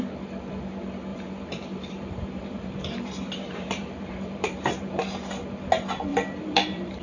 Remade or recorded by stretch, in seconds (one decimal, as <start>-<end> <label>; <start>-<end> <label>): 0.0-1.1 recorded; 1.1-5.3 remade; 5.3-6.1 recorded; 6.1-7.0 remade